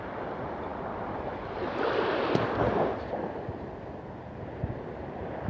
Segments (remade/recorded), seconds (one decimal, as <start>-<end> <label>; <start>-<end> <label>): 0.0-5.5 recorded